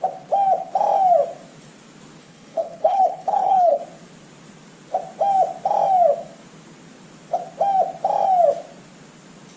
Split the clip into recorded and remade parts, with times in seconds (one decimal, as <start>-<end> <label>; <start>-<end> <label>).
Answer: 0.0-2.2 recorded; 2.2-3.8 remade; 3.8-9.6 recorded